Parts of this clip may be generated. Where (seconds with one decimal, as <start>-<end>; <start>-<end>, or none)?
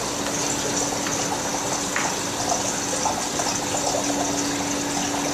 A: none